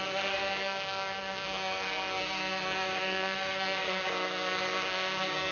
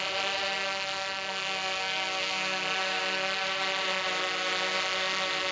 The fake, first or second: first